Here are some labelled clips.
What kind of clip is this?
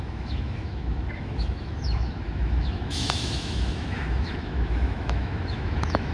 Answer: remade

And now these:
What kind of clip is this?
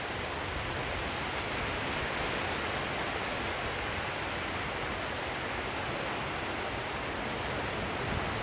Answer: recorded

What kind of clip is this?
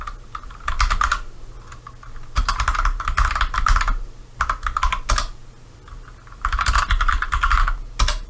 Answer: recorded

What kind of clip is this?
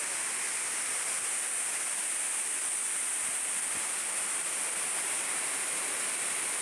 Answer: recorded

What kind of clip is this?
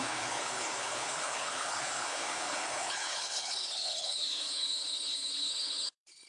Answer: remade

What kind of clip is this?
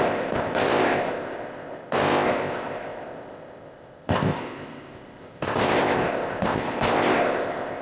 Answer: remade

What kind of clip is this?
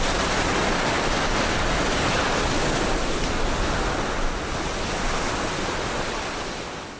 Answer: recorded